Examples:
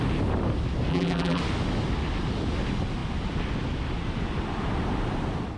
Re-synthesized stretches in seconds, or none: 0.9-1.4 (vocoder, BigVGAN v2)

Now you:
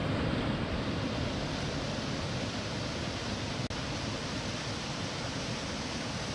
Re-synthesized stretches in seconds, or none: none

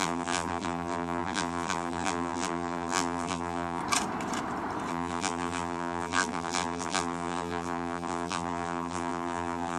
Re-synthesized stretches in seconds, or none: 0.0-3.8 (vocoder, BigVGAN v2); 4.9-9.8

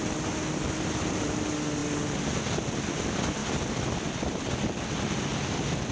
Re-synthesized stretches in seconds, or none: none

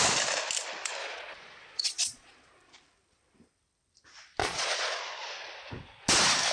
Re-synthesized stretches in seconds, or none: 1.0-2.5 (vocoder, Vocos); 4.4-5.0

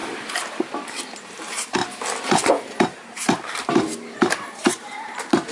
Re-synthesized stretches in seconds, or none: 1.0-1.8 (vocoder, BigVGAN v2); 2.5-5.5

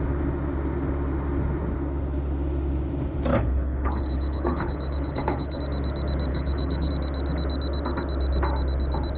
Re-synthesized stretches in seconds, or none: 3.3-5.6 (codec, HILCodec); 6.3-6.9

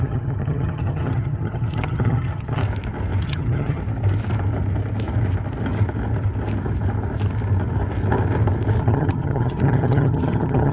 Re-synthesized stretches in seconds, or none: 0.0-2.6 (vocoder, HiFi-GAN); 3.2-3.8; 8.8-10.7